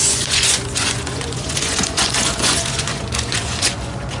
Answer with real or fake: fake